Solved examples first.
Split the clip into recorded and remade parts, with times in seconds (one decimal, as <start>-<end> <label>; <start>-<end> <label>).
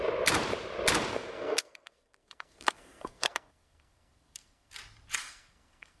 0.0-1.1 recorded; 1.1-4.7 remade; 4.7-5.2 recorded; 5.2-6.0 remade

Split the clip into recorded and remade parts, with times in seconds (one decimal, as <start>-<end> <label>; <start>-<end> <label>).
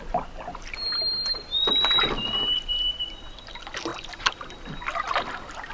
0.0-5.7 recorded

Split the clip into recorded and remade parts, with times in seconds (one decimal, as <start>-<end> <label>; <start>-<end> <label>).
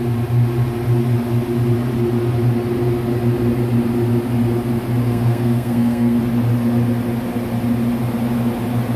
0.0-5.0 recorded; 5.0-6.2 remade; 6.2-9.0 recorded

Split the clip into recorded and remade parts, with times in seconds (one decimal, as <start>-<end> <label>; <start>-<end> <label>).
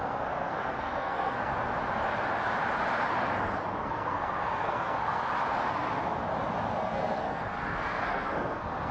0.0-1.5 remade; 1.5-3.8 recorded; 3.8-5.3 remade; 5.3-6.8 recorded; 6.8-8.9 remade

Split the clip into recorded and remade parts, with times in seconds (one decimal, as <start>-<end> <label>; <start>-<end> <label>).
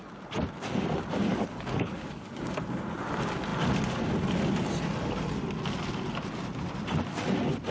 0.0-1.3 recorded; 1.3-2.4 remade; 2.4-7.7 recorded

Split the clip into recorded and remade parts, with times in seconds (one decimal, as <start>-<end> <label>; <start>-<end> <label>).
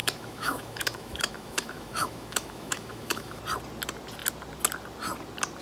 0.0-3.4 remade; 3.4-5.6 recorded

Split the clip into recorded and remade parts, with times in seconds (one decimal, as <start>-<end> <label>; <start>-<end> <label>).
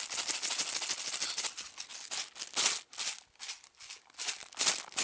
0.0-5.0 recorded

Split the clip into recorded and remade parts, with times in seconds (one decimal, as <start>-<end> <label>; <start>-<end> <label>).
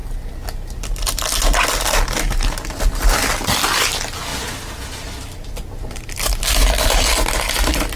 0.0-8.0 recorded